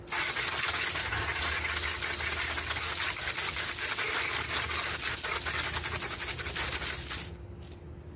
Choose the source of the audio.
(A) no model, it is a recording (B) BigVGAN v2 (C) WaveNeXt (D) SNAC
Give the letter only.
A